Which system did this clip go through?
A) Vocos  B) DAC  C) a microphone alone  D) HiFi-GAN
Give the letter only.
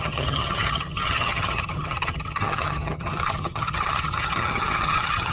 D